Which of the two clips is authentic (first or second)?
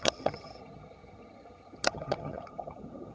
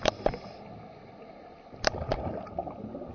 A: second